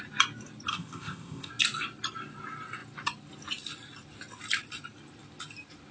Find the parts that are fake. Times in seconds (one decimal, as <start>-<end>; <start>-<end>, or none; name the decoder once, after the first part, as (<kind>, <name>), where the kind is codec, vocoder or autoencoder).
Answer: 0.7-1.5 (codec, ZipCodec)